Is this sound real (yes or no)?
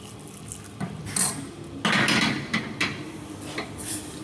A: yes